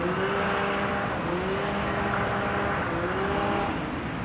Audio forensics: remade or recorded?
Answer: recorded